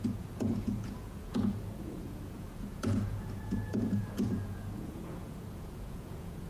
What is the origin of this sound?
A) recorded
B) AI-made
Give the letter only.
B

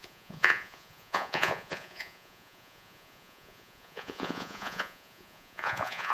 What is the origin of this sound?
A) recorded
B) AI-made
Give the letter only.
B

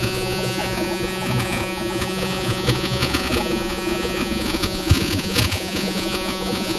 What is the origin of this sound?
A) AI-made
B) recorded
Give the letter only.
A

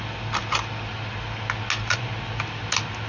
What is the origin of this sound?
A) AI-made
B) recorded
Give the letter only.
B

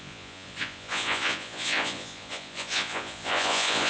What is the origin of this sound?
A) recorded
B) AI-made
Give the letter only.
B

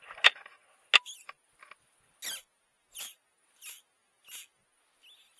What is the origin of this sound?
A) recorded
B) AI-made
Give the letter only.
A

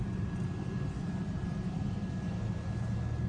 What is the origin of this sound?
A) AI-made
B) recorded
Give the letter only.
B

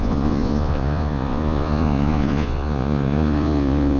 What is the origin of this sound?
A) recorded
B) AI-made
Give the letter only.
B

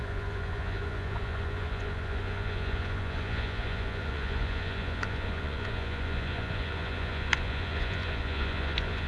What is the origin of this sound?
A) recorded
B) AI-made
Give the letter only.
B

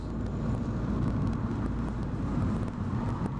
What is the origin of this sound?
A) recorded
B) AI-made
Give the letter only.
A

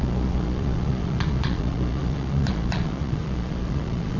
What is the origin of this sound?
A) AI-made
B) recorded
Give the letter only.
A